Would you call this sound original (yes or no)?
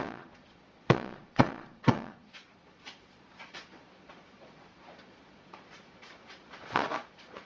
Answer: no